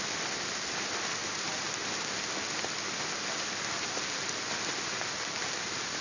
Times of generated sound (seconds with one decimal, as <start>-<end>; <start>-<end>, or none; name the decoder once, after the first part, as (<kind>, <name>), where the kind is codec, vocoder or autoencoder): none